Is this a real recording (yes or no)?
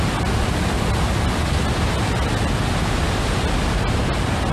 yes